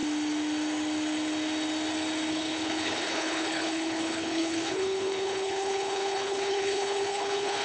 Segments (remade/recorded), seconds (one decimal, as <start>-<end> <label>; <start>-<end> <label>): 0.0-2.3 recorded; 2.3-7.6 remade